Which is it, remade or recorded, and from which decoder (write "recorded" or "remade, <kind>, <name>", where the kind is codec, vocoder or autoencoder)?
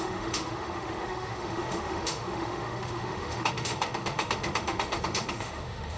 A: remade, autoencoder, DAC-VAE